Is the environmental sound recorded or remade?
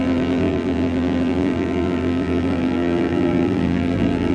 remade